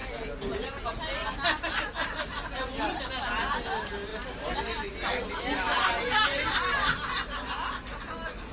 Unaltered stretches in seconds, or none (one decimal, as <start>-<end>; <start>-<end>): 0.8-8.5